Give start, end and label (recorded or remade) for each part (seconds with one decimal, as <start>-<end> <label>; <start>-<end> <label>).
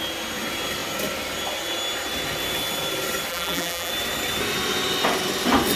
0.0-3.3 recorded; 3.3-3.9 remade; 3.9-5.8 recorded